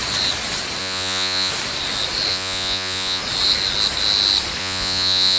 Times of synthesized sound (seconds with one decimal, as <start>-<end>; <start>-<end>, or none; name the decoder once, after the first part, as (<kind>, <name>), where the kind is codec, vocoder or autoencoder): 0.8-1.5 (vocoder, Vocos); 2.3-3.2; 4.6-5.4